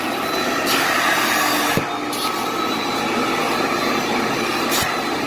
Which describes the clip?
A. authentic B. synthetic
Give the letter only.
A